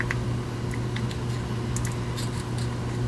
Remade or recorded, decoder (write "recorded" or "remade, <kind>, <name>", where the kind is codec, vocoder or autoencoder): recorded